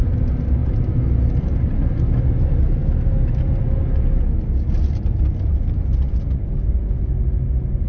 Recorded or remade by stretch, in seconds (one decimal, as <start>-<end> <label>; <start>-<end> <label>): 0.0-7.9 recorded